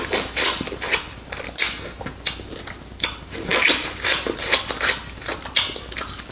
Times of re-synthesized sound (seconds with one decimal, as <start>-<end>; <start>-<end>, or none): none